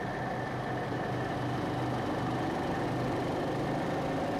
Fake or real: real